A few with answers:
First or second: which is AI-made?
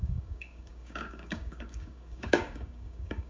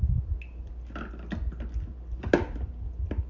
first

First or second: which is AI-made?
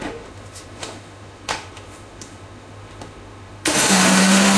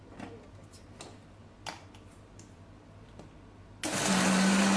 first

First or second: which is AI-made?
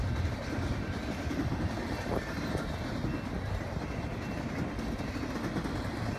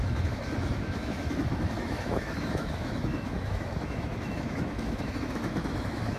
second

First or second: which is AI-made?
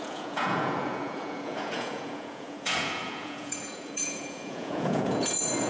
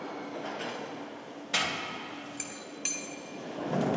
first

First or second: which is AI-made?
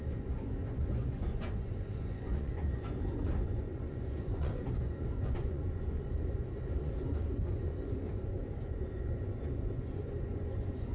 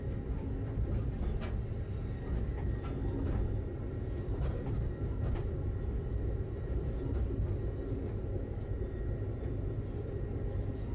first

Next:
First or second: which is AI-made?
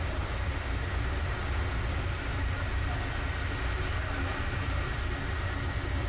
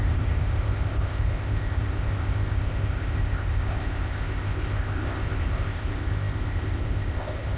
second